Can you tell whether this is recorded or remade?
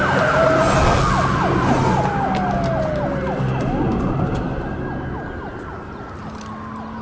recorded